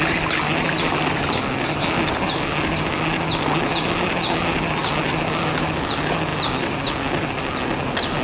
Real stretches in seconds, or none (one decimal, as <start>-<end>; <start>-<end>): 0.0-8.2